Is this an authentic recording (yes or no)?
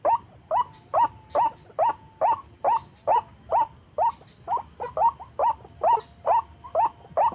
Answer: yes